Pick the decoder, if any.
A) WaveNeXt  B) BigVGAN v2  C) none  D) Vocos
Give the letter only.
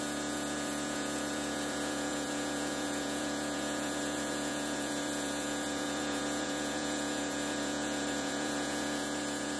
D